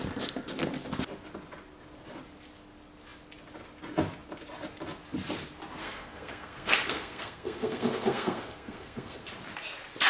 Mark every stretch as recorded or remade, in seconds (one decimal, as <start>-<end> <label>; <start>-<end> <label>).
0.0-5.8 recorded; 5.8-9.3 remade; 9.3-10.1 recorded